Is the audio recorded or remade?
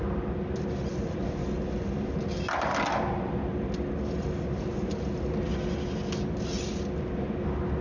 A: recorded